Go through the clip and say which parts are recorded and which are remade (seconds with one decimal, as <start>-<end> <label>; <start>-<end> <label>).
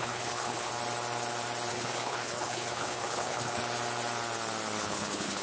0.0-0.7 remade; 0.7-1.7 recorded; 1.7-3.6 remade; 3.6-4.8 recorded; 4.8-5.4 remade